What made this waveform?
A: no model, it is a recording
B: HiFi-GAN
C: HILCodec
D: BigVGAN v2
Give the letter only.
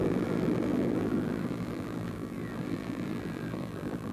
D